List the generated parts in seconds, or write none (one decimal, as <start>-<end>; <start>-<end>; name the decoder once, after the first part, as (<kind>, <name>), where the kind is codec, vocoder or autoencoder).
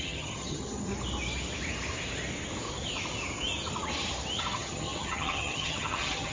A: 0.0-0.9 (vocoder, HiFi-GAN); 4.4-6.3